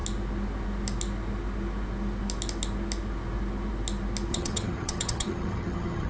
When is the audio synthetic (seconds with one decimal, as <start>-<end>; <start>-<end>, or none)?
4.3-6.1